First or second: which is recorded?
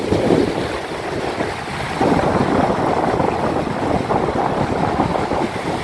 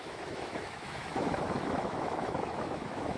first